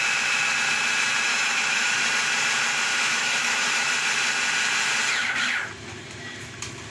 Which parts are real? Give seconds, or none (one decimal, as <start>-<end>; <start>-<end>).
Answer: 0.0-1.3; 1.9-2.9; 3.9-6.9